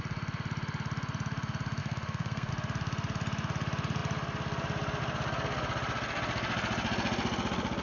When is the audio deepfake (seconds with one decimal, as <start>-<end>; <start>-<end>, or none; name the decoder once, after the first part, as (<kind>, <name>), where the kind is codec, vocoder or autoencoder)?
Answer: 1.8-2.5 (codec, SNAC)